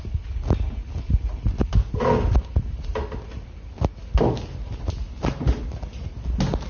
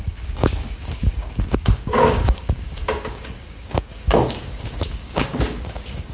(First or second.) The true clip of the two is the first